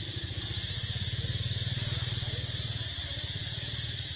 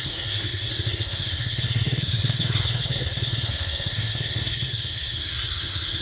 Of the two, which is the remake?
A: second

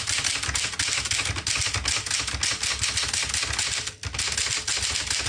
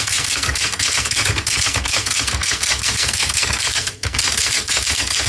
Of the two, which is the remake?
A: second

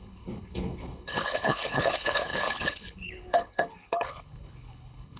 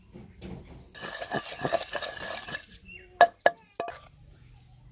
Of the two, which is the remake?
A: first